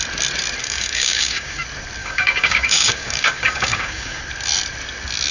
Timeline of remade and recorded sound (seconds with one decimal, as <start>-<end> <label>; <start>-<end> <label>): 0.0-0.6 recorded; 0.6-1.6 remade; 1.6-2.0 recorded; 2.0-4.2 remade; 4.2-5.3 recorded